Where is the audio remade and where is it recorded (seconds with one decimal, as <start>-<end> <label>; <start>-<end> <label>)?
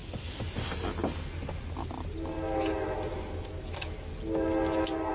0.0-3.1 recorded; 3.1-4.1 remade; 4.1-5.1 recorded